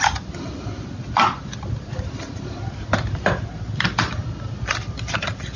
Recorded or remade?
recorded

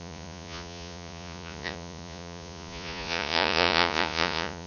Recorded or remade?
remade